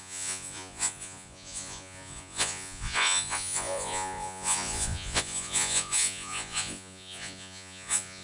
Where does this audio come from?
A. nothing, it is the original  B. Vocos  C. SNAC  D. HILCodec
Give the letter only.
B